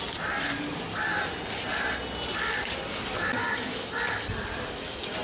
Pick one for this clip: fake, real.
real